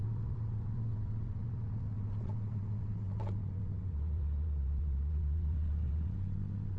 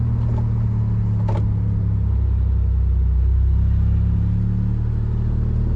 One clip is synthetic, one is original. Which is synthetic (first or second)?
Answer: first